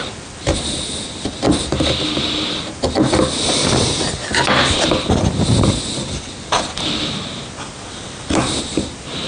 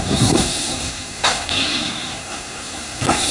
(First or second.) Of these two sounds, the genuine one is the first